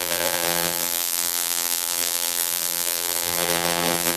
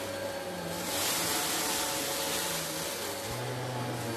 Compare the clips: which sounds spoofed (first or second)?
first